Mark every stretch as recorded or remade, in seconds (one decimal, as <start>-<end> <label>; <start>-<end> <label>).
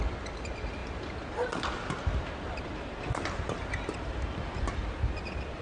0.0-5.6 recorded